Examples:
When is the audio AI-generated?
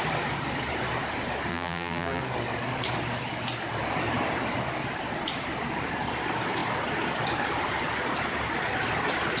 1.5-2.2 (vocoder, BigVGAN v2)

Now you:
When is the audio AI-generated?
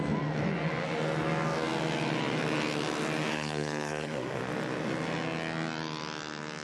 3.3-4.4 (codec, SNAC)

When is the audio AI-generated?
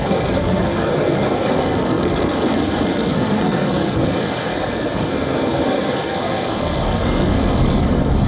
0.0-8.3 (codec, SNAC)